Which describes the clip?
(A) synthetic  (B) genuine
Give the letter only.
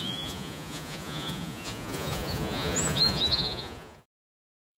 A